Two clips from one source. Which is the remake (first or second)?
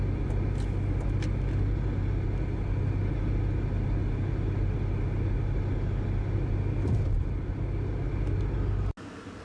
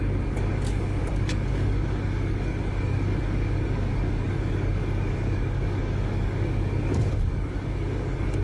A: second